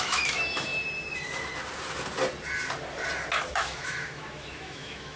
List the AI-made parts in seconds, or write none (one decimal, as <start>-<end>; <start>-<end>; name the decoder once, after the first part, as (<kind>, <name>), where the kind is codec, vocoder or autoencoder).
0.0-0.7 (autoencoder, DAC-VAE); 3.5-5.2